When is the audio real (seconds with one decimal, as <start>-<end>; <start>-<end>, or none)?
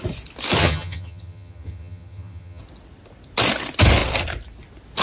0.0-0.6; 2.6-5.0